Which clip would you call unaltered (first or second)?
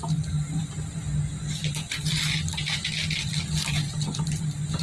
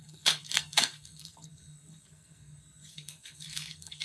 first